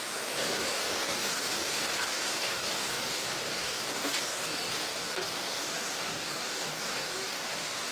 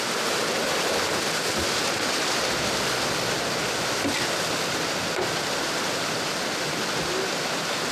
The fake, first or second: first